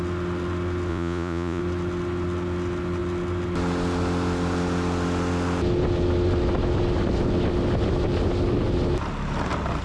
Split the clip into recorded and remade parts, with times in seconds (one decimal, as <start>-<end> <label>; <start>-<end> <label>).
0.0-0.9 recorded; 0.9-1.6 remade; 1.6-9.8 recorded